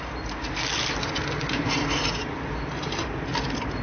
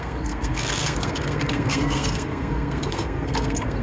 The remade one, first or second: second